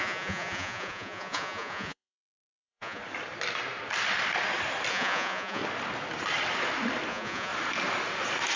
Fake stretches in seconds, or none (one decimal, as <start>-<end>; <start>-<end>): 0.0-3.0; 4.9-5.6; 7.1-7.5

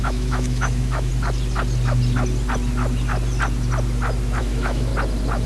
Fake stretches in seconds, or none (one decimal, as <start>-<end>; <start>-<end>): 0.0-1.1; 4.4-4.9

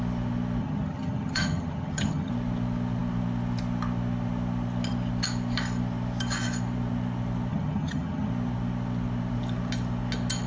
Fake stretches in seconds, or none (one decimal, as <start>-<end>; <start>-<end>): 0.6-2.3; 7.5-8.3

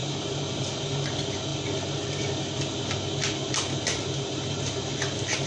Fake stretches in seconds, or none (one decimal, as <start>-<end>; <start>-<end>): none

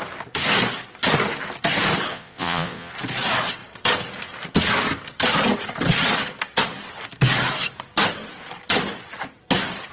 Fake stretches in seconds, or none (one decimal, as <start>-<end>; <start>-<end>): 2.1-2.9

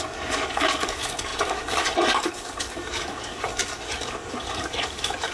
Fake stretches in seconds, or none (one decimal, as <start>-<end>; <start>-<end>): 0.0-5.3

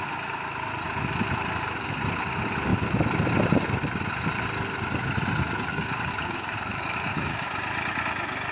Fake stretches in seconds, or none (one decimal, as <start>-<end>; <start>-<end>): 5.7-7.5

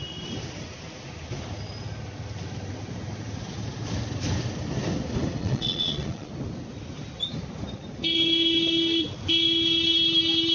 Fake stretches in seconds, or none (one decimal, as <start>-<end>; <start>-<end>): 5.4-6.3